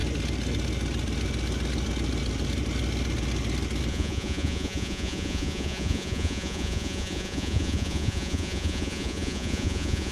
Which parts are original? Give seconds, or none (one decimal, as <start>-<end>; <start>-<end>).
0.0-3.9